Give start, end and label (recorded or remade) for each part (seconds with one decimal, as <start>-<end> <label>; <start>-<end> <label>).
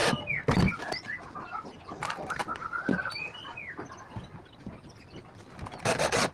0.0-6.3 recorded